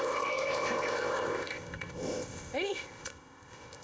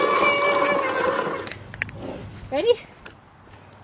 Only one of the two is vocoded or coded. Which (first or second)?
first